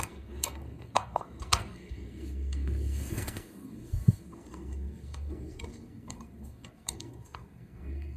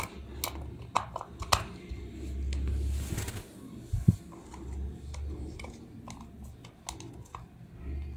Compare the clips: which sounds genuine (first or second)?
second